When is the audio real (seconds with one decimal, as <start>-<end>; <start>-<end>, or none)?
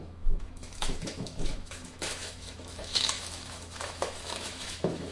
none